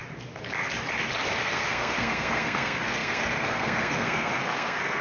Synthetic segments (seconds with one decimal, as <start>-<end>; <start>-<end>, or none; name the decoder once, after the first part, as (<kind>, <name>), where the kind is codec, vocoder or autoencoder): 1.4-5.0 (codec, SNAC)